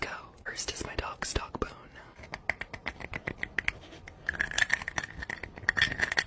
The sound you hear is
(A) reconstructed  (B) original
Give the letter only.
B